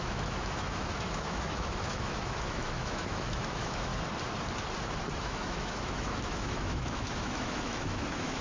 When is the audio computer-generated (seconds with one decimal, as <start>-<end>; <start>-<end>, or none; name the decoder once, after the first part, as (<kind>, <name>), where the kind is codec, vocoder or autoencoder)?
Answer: 0.0-3.9 (autoencoder, DAC-VAE); 5.2-8.4